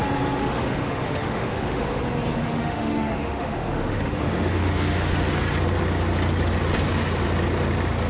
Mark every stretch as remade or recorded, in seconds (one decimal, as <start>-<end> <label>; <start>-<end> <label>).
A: 0.0-0.4 recorded; 0.4-2.0 remade; 2.0-2.4 recorded; 2.4-5.3 remade; 5.3-8.1 recorded